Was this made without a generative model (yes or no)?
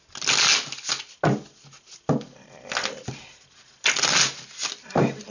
yes